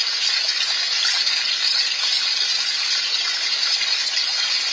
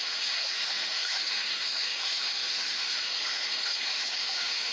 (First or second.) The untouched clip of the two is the first